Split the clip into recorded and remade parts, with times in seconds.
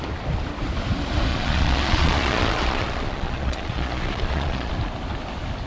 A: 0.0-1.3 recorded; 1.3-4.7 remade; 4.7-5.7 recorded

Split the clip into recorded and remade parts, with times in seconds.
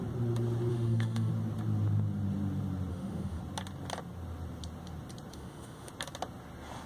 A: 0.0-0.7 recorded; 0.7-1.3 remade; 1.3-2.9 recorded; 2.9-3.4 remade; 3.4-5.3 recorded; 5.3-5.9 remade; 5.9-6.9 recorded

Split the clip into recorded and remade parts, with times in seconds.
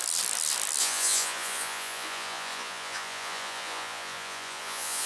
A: 0.0-0.8 recorded; 0.8-5.1 remade